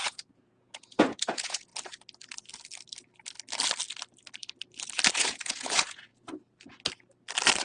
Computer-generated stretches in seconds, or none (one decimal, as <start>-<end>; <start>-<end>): 0.0-1.7; 5.1-6.1